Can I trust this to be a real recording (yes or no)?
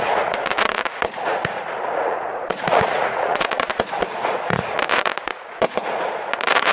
no